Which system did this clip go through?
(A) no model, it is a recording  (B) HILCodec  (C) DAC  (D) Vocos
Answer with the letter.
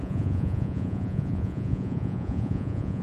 D